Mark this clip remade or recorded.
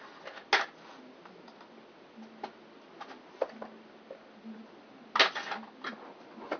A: recorded